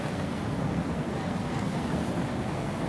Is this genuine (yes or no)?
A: no